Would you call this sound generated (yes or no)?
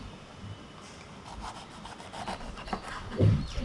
no